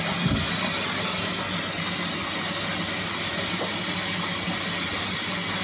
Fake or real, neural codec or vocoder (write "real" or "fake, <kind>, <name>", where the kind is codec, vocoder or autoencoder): real